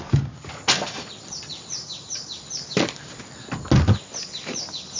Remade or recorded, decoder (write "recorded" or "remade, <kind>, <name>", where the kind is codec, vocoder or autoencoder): recorded